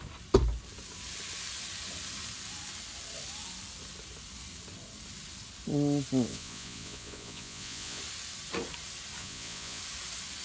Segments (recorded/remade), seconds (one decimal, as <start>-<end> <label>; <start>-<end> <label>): 0.0-6.3 recorded; 6.3-8.0 remade; 8.0-9.2 recorded; 9.2-9.8 remade; 9.8-10.4 recorded

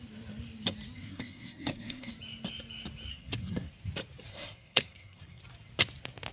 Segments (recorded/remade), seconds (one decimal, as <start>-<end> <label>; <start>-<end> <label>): 0.0-1.0 recorded; 1.0-2.1 remade; 2.1-3.1 recorded; 3.1-3.7 remade; 3.7-4.3 recorded; 4.3-5.4 remade; 5.4-6.3 recorded